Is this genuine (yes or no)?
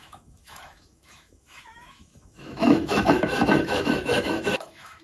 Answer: no